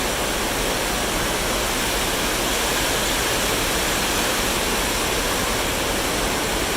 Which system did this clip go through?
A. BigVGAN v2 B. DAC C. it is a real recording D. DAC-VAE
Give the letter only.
C